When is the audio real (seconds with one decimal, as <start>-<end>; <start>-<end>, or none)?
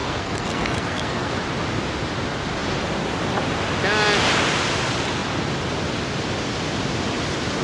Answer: 1.4-7.6